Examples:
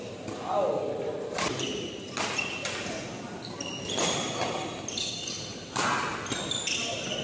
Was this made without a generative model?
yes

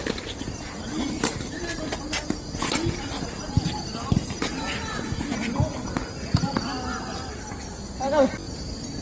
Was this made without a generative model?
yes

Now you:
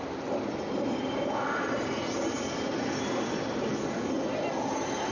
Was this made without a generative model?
yes